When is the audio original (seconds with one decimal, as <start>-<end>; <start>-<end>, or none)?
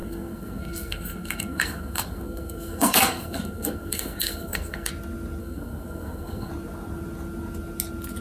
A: 4.9-5.4; 6.5-8.2